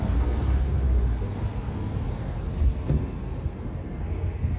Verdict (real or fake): fake